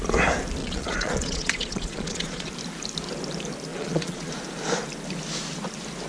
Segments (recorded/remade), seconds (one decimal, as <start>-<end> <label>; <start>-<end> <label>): 0.0-0.6 recorded; 0.6-2.5 remade; 2.5-3.7 recorded; 3.7-4.3 remade; 4.3-6.1 recorded